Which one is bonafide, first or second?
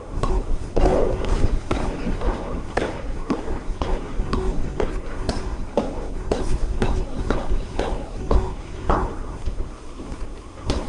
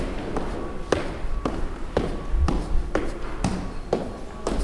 second